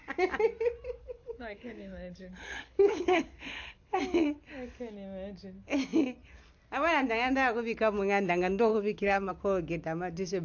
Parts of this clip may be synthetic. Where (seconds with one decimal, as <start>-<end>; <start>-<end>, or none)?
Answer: 1.0-4.0; 8.7-9.3